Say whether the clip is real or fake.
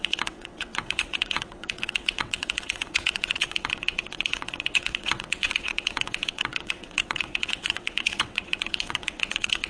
fake